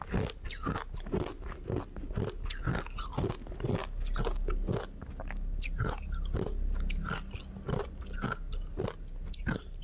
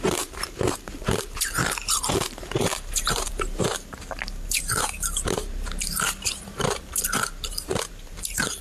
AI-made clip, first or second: second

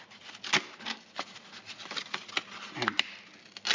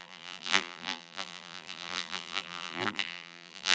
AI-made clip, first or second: second